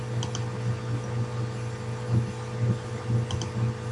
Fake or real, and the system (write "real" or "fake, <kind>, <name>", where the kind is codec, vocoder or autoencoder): real